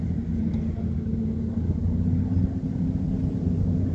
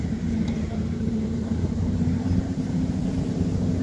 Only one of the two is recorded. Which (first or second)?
first